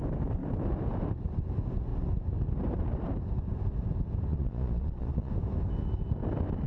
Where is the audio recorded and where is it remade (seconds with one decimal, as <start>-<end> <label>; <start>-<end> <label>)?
0.0-4.3 recorded; 4.3-5.3 remade; 5.3-6.7 recorded